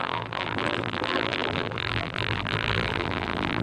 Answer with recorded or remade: remade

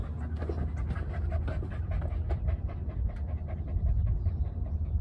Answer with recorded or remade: recorded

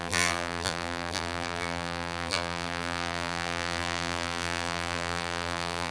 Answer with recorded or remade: remade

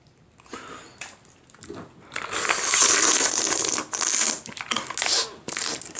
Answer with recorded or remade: recorded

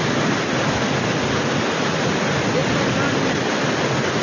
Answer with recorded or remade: recorded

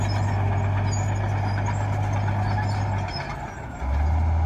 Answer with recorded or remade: recorded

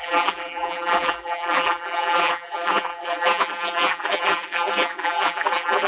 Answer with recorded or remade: remade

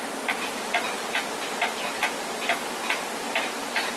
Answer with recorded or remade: recorded